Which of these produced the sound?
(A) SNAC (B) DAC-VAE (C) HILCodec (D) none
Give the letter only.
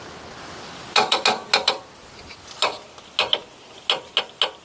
D